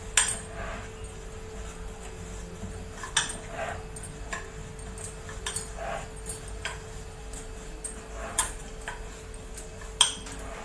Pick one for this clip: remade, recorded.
recorded